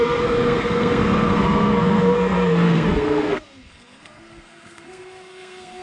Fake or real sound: fake